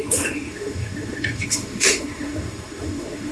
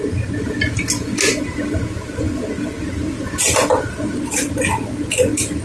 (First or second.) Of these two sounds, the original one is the second